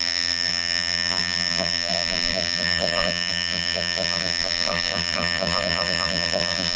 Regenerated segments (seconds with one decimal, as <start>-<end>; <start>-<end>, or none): 0.0-6.8